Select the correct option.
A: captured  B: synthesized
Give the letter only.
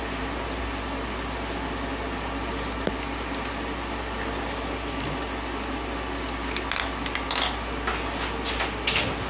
A